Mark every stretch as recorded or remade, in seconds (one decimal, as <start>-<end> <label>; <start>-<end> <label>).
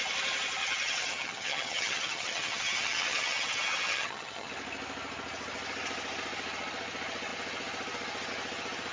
0.0-0.6 recorded; 0.6-4.5 remade; 4.5-8.9 recorded